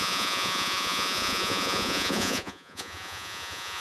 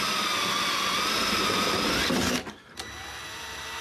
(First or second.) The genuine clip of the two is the second